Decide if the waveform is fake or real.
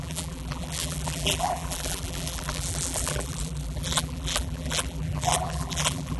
fake